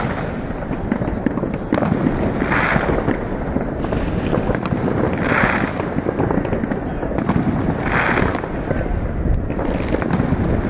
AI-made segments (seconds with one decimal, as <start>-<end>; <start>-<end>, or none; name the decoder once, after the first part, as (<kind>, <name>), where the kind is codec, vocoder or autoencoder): none